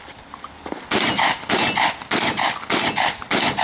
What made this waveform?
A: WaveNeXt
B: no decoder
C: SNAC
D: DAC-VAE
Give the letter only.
B